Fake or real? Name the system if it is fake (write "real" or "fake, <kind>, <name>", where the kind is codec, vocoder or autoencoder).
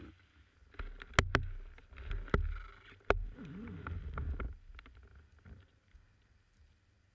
real